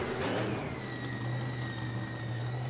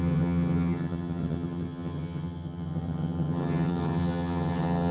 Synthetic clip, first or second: second